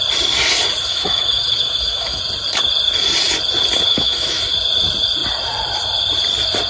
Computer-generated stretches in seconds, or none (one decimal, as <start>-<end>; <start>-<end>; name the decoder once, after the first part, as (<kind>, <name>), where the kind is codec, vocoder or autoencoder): 0.9-2.2 (autoencoder, DAC-VAE); 3.9-4.4